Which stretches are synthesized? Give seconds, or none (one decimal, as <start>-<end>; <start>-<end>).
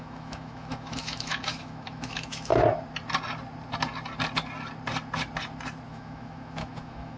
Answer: 0.0-2.5; 5.9-7.2